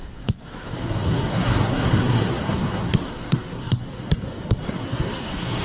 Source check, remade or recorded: remade